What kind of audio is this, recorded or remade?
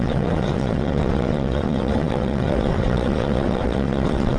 remade